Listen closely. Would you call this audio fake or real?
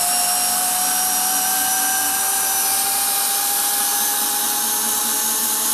real